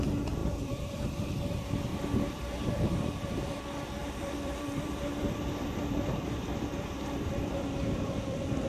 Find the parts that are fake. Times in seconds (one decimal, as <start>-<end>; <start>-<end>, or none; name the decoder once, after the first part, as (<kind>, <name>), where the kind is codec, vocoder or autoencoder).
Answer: 0.4-1.1 (vocoder, BigVGAN v2); 1.9-3.6; 4.0-8.7